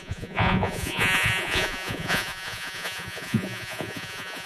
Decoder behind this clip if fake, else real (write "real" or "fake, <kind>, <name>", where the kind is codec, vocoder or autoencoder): fake, vocoder, Vocos